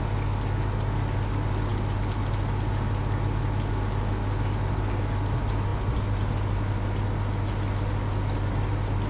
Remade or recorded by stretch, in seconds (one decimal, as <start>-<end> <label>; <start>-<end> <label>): 0.0-9.1 recorded